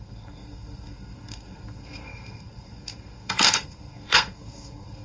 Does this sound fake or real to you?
fake